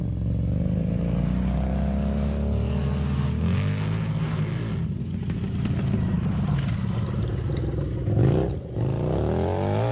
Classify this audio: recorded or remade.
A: recorded